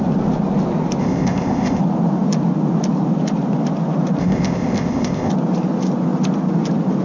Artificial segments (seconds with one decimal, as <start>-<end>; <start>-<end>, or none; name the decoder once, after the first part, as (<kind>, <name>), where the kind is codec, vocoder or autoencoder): 1.0-1.8 (codec, ZipCodec); 4.2-5.3